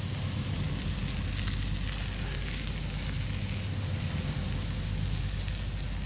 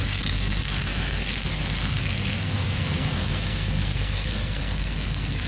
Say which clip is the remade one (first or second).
second